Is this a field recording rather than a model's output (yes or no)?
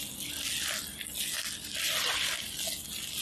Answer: yes